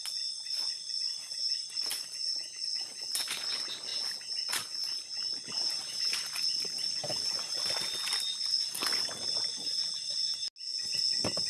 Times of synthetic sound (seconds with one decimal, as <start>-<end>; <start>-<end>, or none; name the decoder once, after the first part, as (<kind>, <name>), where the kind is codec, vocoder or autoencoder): none